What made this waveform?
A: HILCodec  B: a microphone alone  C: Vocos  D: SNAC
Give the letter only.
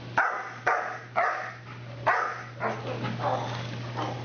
B